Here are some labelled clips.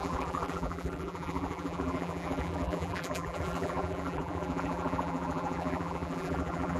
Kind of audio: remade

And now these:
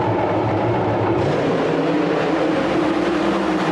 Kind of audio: remade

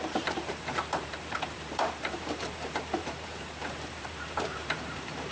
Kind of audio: remade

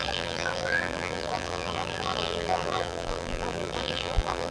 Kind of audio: remade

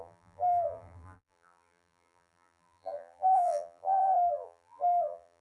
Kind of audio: remade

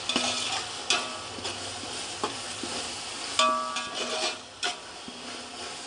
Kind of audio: recorded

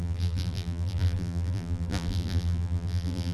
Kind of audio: remade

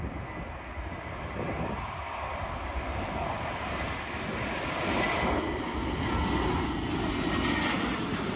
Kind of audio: recorded